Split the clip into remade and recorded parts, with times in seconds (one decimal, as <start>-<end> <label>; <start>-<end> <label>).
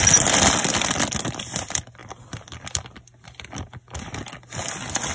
0.0-5.1 recorded